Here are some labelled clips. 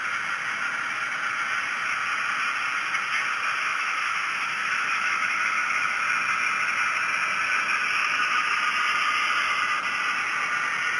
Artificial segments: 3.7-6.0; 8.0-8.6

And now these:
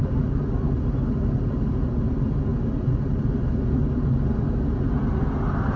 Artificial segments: none

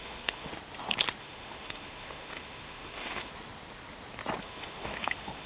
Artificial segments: 0.0-0.5; 1.2-3.3; 4.4-5.5